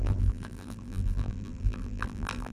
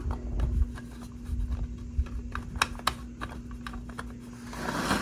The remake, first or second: first